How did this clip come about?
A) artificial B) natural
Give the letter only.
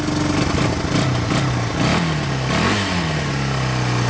B